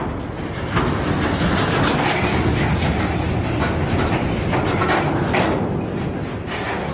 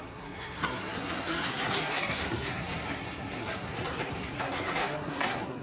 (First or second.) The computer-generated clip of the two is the second